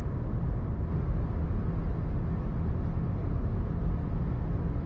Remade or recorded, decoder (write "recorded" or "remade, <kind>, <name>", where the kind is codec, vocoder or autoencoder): recorded